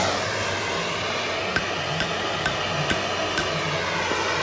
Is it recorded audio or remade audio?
recorded